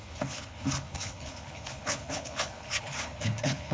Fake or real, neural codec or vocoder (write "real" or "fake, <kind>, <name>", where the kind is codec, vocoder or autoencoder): fake, codec, HILCodec